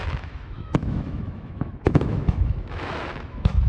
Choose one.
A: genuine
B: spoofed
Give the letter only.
B